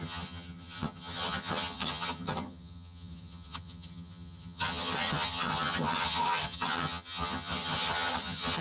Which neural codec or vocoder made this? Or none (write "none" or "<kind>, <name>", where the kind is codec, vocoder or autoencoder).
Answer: vocoder, HiFi-GAN